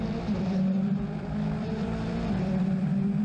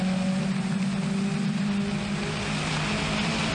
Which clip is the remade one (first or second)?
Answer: first